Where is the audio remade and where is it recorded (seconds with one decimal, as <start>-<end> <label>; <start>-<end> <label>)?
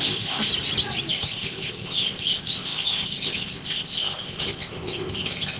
0.0-0.5 remade; 0.5-1.1 recorded; 1.1-5.6 remade